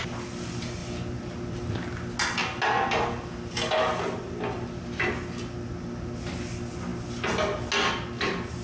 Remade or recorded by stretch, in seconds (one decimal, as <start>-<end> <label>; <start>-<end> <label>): 0.0-8.6 recorded